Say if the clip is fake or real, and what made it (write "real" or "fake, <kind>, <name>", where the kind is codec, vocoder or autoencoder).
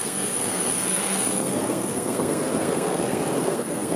fake, codec, SNAC